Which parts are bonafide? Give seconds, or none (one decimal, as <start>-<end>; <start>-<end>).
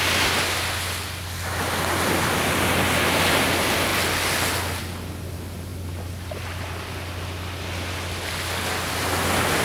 0.0-9.6